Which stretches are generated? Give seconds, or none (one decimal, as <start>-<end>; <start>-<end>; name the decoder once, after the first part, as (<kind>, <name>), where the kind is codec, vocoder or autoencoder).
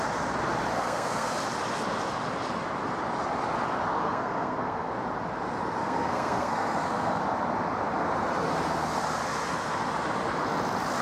0.7-1.3 (codec, SNAC); 4.0-4.9; 5.8-7.2